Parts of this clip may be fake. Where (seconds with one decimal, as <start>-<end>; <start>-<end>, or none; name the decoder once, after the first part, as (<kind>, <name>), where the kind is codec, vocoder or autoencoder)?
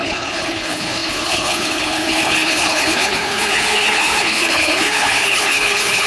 0.0-6.1 (codec, HILCodec)